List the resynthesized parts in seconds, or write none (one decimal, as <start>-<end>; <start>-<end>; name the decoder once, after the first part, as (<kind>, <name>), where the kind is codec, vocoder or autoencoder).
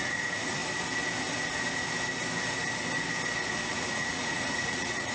0.0-0.6 (vocoder, Vocos); 3.7-5.1